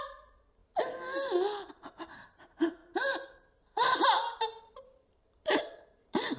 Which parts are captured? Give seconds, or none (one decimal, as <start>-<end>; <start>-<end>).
0.6-1.7; 2.8-4.4